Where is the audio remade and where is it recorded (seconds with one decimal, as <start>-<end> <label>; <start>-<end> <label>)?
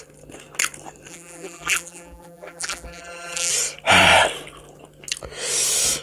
0.0-1.1 recorded; 1.1-3.5 remade; 3.5-6.0 recorded